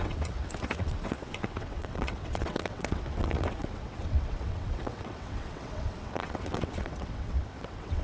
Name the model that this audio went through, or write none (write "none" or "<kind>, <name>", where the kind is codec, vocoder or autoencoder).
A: vocoder, WaveNeXt